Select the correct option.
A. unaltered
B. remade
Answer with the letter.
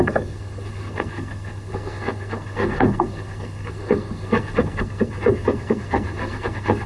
B